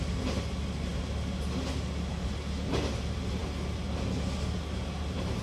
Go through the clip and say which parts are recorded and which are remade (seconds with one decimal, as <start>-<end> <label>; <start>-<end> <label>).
0.0-5.4 recorded